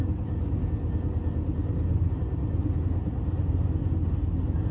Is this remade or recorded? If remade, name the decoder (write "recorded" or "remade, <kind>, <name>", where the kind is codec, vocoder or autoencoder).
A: recorded